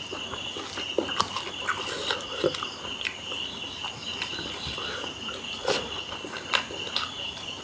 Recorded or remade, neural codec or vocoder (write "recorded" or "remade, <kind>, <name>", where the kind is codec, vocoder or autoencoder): recorded